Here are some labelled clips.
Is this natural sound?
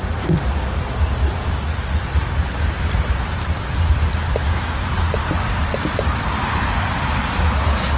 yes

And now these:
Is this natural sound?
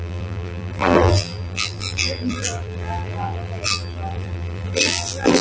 no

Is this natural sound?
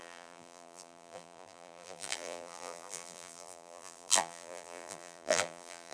no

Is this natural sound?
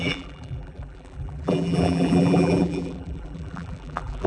no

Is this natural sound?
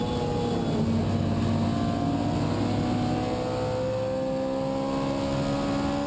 yes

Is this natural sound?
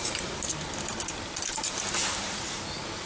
yes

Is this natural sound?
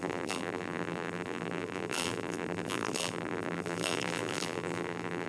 no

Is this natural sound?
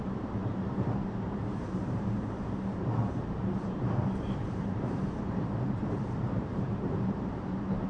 no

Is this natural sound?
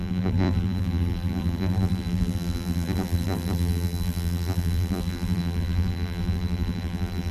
no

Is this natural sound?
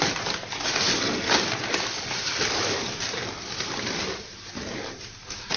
no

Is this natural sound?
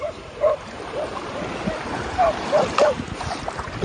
no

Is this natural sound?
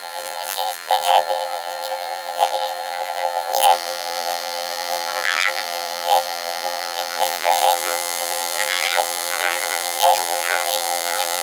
no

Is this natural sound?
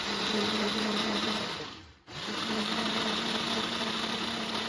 no